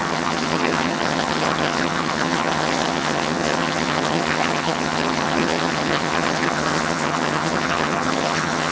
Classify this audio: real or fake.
fake